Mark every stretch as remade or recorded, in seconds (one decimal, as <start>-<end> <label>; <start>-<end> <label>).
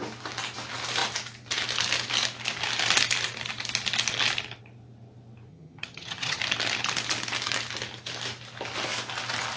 0.0-5.5 recorded; 5.5-6.4 remade; 6.4-9.6 recorded